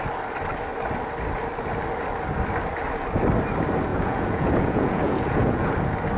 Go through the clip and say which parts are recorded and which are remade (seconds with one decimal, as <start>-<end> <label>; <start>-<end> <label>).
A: 0.0-3.9 recorded; 3.9-5.7 remade; 5.7-6.2 recorded

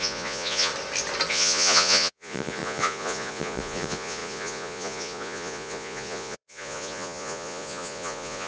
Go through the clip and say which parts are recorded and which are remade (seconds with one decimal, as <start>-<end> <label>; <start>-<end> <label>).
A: 0.0-0.7 remade; 0.7-1.3 recorded; 1.3-8.5 remade